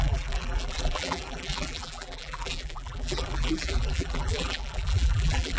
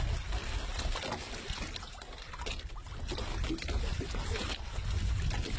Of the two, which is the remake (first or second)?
first